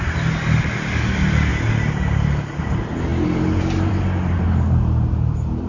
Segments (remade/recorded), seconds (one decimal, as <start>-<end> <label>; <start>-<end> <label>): 0.0-5.7 recorded